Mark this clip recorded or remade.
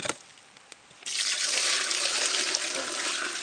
recorded